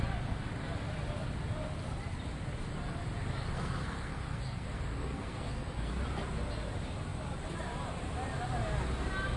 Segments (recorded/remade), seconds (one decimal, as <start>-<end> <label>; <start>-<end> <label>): 0.0-3.5 recorded; 3.5-5.9 remade; 5.9-9.4 recorded